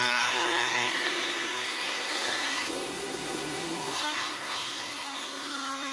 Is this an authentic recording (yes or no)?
no